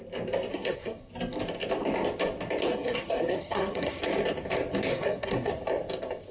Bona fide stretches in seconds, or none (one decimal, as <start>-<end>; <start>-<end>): 0.0-0.5; 1.1-2.7; 4.0-4.9; 5.5-6.3